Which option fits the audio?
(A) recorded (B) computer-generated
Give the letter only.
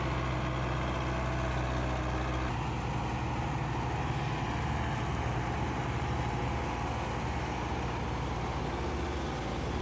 A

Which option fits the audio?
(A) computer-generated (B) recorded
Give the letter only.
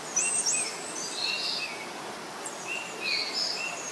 B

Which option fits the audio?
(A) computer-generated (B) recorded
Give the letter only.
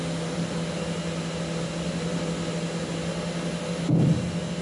B